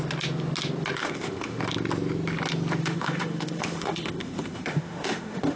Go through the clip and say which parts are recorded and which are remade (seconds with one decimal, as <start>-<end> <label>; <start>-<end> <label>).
0.0-1.0 recorded; 1.0-1.6 remade; 1.6-2.8 recorded; 2.8-5.6 remade